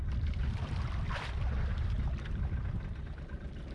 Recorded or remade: recorded